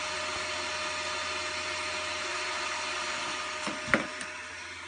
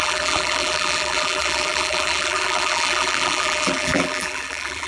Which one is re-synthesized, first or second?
second